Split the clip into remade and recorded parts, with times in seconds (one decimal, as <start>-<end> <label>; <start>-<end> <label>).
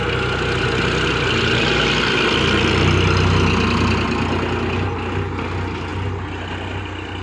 0.0-7.2 recorded